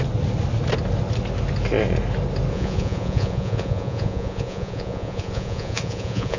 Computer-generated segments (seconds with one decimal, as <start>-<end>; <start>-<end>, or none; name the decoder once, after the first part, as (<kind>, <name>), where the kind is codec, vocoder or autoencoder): 2.5-6.4 (vocoder, Vocos)